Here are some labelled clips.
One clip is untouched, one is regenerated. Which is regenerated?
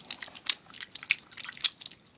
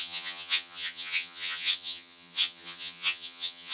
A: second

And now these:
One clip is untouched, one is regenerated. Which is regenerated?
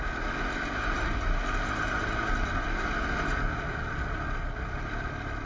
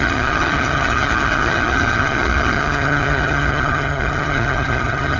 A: second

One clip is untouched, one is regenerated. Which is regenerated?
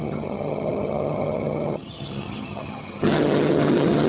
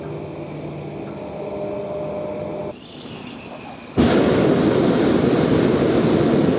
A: first